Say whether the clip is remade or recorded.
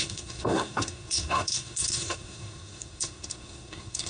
remade